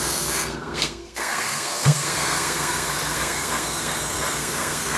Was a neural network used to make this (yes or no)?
yes